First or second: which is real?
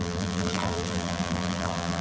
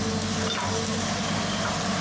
second